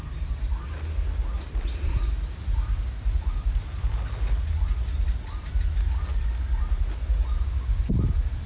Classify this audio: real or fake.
real